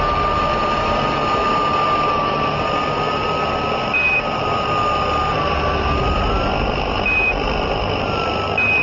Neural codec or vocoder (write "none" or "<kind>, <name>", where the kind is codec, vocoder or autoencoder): none